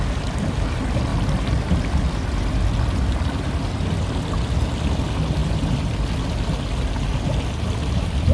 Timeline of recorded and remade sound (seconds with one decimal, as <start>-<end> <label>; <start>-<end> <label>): 0.0-1.1 recorded; 1.1-4.3 remade; 4.3-5.4 recorded; 5.4-6.1 remade; 6.1-8.3 recorded